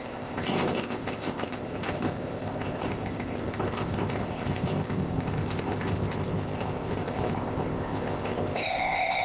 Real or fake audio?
fake